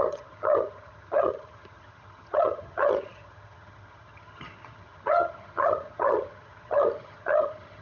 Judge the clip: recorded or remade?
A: remade